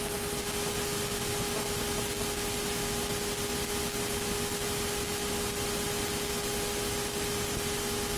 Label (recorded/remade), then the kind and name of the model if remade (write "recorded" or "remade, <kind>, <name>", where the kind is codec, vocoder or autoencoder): recorded